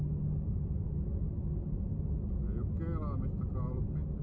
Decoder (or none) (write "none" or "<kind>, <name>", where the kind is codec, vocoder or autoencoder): none